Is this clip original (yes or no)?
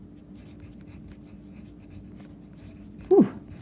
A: yes